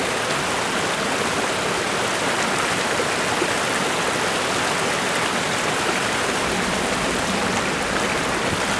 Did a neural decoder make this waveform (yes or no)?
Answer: no